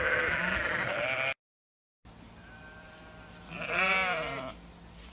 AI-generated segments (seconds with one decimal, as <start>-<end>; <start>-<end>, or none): none